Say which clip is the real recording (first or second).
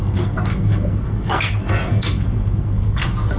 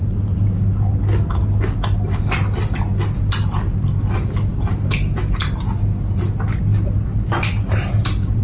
second